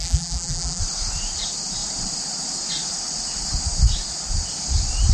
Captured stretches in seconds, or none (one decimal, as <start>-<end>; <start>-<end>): 0.8-5.1